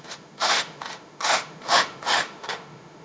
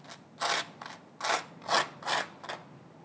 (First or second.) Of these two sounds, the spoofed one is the first